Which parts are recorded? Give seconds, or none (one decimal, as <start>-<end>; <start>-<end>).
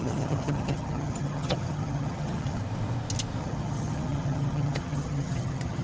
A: 2.6-3.4